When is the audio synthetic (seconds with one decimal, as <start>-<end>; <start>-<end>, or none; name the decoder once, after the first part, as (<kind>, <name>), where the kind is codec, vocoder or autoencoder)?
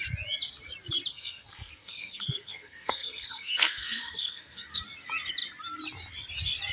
1.1-4.8 (codec, SNAC)